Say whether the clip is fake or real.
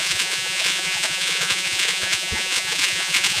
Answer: fake